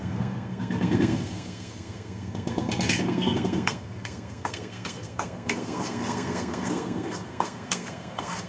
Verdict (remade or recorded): remade